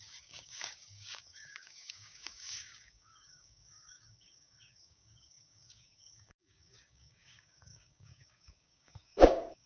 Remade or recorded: remade